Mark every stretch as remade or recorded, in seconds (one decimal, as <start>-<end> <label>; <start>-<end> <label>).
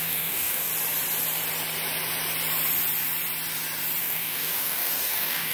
0.0-0.7 remade; 0.7-4.0 recorded; 4.0-5.5 remade